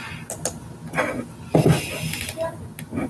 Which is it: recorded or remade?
recorded